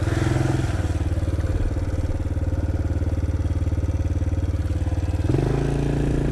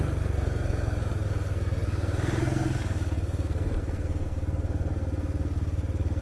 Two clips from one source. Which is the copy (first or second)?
second